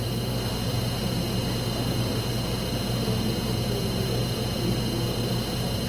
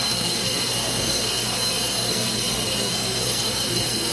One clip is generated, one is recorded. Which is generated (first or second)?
second